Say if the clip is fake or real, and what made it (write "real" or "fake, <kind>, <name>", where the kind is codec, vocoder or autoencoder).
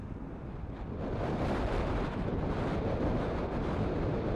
real